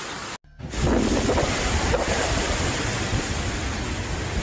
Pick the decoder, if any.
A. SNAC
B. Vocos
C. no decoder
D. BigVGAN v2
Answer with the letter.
C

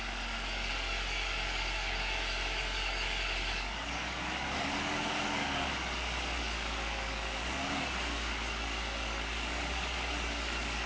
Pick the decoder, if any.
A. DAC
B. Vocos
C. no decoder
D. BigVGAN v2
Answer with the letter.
A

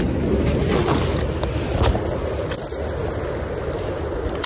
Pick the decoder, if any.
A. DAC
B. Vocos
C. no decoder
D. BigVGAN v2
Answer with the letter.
C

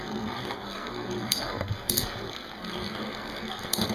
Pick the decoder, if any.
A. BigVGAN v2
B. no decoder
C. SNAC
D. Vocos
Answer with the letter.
C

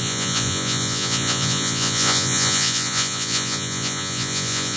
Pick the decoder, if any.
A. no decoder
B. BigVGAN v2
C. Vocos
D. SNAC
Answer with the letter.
C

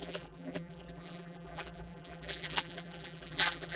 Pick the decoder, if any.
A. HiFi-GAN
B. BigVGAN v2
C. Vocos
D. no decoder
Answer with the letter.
B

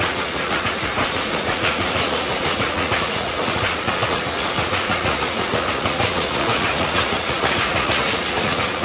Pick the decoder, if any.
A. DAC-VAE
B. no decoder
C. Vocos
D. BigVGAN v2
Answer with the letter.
C